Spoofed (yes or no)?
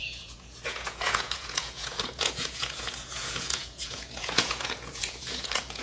yes